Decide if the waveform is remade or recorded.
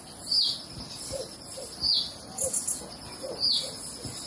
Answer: recorded